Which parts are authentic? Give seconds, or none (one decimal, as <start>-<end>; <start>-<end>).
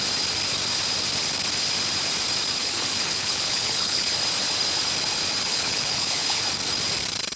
0.0-2.6; 4.1-5.5; 6.4-7.4